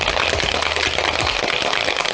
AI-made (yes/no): no